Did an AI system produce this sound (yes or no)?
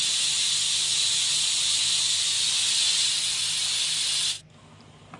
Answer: no